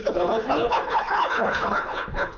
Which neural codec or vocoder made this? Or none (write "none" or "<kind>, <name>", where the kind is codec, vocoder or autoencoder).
codec, HILCodec